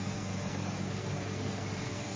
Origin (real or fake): fake